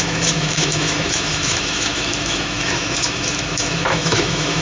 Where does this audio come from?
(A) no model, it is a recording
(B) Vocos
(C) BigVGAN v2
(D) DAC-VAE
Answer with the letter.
D